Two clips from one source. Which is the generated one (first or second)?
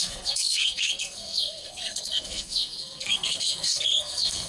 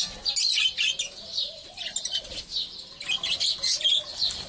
first